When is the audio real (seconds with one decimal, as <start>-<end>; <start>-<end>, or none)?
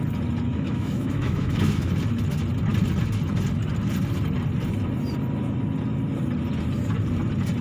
0.0-0.5; 1.9-7.6